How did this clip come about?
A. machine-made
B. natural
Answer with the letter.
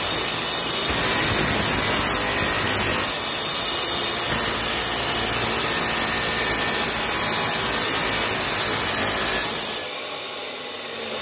B